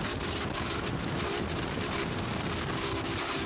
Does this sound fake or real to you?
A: fake